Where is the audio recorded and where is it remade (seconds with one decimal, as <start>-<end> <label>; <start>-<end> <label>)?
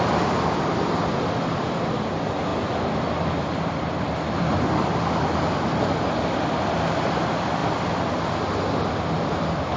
0.0-9.8 recorded